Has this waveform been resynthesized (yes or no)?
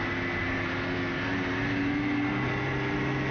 no